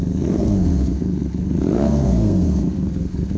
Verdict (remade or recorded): remade